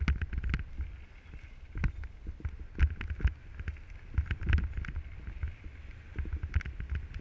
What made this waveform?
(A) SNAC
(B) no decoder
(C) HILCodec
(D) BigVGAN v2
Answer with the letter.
B